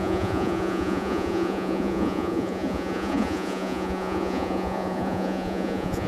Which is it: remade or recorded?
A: remade